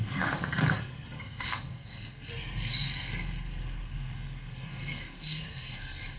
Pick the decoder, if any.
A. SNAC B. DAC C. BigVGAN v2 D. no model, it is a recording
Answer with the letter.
A